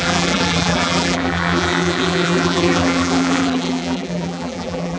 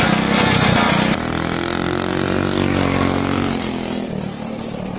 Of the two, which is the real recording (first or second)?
second